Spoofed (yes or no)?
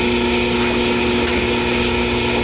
no